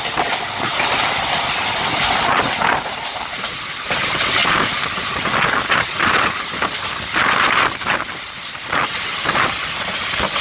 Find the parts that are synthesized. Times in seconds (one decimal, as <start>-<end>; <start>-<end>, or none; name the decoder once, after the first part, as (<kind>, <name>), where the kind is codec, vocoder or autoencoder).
none

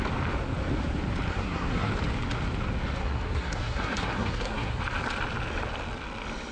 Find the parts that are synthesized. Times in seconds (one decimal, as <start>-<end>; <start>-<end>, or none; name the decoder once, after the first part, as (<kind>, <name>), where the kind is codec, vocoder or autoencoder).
1.3-1.9 (codec, SNAC); 3.0-4.8

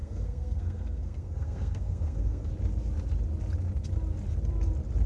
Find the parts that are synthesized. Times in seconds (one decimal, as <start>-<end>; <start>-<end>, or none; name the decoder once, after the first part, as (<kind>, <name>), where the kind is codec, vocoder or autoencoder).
0.0-2.5 (codec, SNAC)

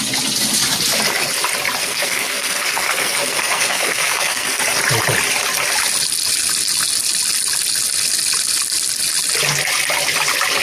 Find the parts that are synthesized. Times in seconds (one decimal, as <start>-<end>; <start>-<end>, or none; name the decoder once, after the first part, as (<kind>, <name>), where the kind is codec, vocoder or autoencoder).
1.8-4.6 (codec, SNAC)